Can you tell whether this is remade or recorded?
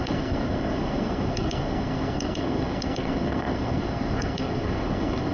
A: remade